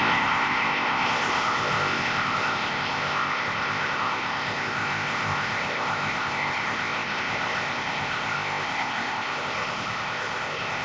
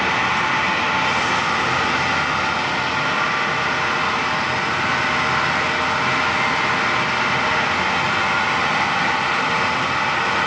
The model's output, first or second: first